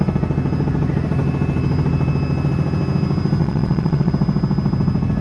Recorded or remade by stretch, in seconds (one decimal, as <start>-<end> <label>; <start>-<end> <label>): 0.0-3.4 recorded; 3.4-4.1 remade; 4.1-5.2 recorded